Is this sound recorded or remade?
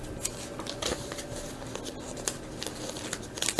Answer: recorded